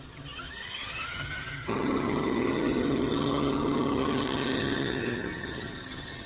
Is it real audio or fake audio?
fake